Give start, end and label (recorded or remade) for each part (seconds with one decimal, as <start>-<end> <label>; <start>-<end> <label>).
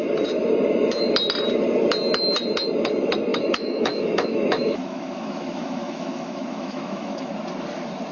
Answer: 0.0-3.3 recorded; 3.3-7.3 remade; 7.3-8.1 recorded